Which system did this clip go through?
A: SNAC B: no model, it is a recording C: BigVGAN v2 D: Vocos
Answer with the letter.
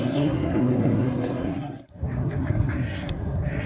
A